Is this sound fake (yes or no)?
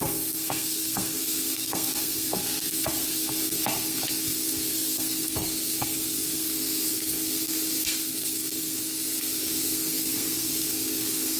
yes